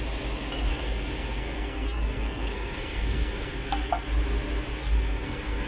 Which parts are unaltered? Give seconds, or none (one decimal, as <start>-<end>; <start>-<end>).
0.0-0.7; 3.9-4.8